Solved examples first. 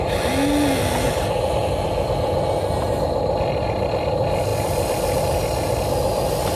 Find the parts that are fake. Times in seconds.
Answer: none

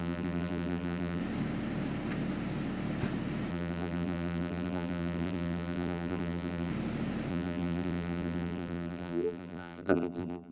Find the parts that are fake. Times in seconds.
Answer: 0.0-1.2 (vocoder, BigVGAN v2); 3.5-6.7; 7.3-10.5